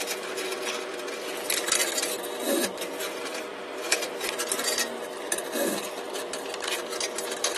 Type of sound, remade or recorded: recorded